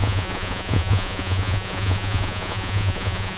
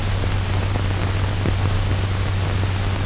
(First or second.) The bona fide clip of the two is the second